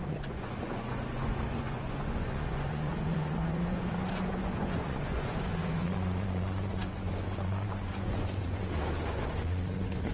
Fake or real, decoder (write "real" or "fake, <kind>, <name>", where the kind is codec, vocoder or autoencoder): fake, vocoder, Vocos